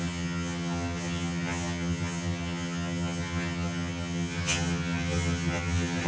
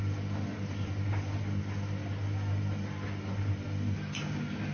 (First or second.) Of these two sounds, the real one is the second